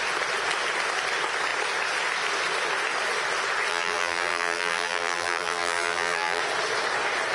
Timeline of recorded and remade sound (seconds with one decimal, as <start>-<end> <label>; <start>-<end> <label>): 0.0-3.7 recorded; 3.7-6.4 remade; 6.4-7.3 recorded